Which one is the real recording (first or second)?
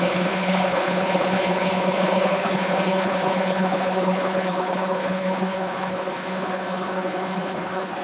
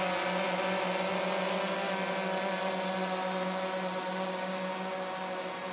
second